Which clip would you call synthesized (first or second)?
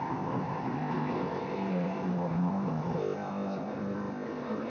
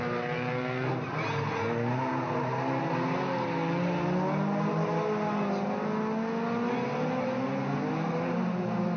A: first